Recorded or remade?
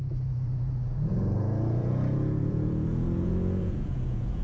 remade